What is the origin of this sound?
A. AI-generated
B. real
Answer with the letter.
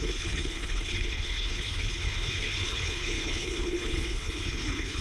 A